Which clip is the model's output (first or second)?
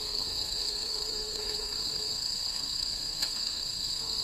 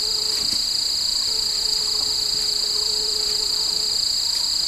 first